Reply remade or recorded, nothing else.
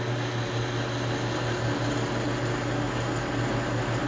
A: recorded